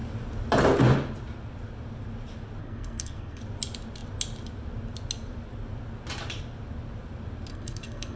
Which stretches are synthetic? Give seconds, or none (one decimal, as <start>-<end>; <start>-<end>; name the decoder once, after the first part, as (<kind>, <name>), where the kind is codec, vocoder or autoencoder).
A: 2.6-3.4 (codec, SNAC); 7.5-8.2

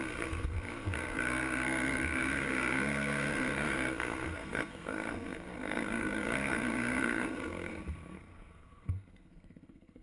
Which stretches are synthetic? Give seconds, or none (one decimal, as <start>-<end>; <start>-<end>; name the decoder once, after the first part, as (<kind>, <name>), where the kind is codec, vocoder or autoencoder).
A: 0.0-10.0 (codec, SNAC)

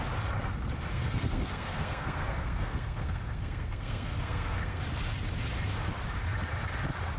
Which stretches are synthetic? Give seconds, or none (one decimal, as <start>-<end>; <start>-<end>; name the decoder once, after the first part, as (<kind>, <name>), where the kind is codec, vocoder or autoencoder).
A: 0.9-4.8 (codec, SNAC)

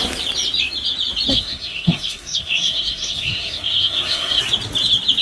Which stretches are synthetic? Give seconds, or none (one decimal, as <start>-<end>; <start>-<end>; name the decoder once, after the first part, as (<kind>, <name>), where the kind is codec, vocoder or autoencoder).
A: 1.3-4.4 (codec, SNAC)

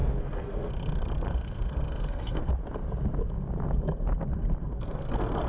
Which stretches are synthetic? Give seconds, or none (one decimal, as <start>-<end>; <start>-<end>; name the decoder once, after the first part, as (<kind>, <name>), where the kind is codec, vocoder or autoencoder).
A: 0.0-0.7 (codec, SNAC); 1.3-2.5; 4.6-5.5

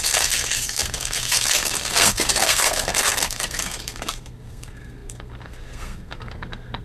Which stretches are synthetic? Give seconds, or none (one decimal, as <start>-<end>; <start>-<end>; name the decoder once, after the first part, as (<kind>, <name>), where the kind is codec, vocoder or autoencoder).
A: 0.0-6.8 (codec, SNAC)